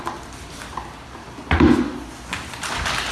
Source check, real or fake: real